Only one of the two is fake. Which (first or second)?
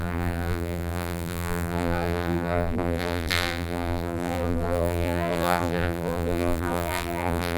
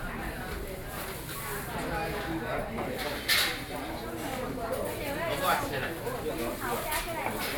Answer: first